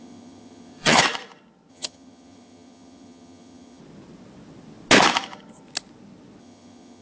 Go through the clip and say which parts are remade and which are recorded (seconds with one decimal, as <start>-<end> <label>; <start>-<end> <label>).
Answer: 0.0-1.0 remade; 1.0-1.7 recorded; 1.7-3.8 remade; 3.8-6.4 recorded; 6.4-7.0 remade